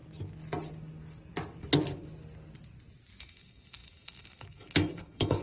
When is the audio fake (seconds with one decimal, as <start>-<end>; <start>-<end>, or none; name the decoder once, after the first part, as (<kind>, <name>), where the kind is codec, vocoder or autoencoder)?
3.2-5.4 (autoencoder, DAC-VAE)